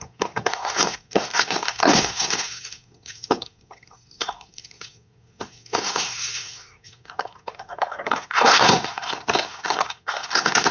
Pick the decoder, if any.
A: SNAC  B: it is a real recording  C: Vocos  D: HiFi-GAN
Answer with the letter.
A